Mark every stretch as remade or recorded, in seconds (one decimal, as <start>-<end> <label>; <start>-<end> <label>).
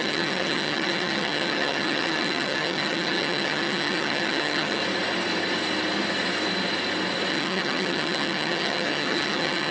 0.0-4.8 remade; 4.8-7.3 recorded; 7.3-9.7 remade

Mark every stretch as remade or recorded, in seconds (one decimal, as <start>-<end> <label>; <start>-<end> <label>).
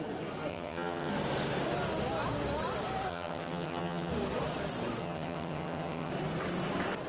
0.0-0.5 recorded; 0.5-1.1 remade; 1.1-3.1 recorded; 3.1-4.1 remade; 4.1-5.0 recorded; 5.0-6.1 remade; 6.1-7.1 recorded